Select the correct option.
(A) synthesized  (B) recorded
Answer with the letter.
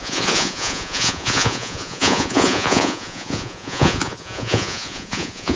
A